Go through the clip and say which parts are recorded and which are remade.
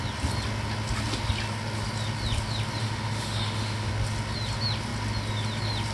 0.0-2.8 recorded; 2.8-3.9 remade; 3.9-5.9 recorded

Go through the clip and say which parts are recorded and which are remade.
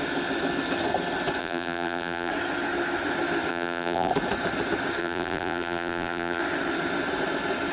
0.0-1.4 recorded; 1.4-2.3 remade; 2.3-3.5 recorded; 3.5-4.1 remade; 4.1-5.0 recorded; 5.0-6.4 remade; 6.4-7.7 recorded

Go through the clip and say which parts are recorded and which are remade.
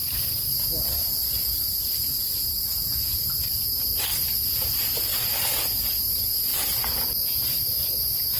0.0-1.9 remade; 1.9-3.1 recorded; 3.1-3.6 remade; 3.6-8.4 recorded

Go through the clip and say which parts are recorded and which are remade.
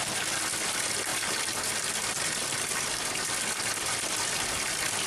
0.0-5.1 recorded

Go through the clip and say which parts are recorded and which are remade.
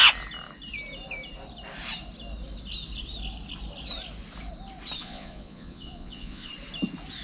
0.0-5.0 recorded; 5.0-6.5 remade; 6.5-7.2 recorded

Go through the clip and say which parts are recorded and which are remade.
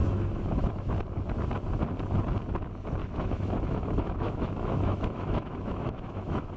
0.0-0.9 remade; 0.9-3.0 recorded; 3.0-6.6 remade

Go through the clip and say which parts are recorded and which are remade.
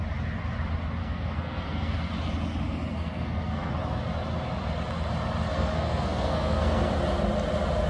0.0-1.0 recorded; 1.0-2.1 remade; 2.1-2.9 recorded; 2.9-3.7 remade; 3.7-5.5 recorded; 5.5-6.9 remade; 6.9-7.9 recorded